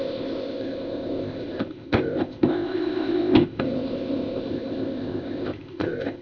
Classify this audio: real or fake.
fake